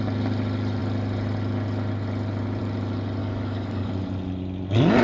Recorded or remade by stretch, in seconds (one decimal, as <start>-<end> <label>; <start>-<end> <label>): 0.0-3.2 recorded; 3.2-3.9 remade; 3.9-5.0 recorded